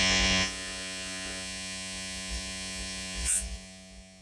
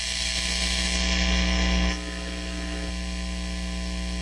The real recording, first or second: second